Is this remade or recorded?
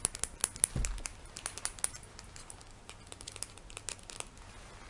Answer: recorded